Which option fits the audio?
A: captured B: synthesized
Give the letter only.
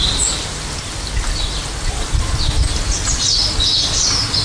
A